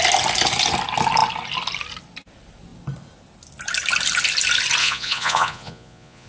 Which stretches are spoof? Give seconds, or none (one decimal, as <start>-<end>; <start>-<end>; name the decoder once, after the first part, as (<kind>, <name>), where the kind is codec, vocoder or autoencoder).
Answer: 4.8-6.3 (vocoder, Vocos)